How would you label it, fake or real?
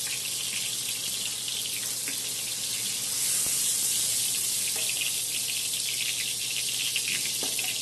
real